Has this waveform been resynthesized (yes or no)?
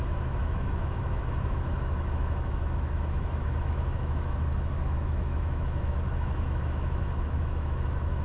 yes